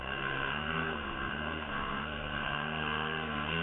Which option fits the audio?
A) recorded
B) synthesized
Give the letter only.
B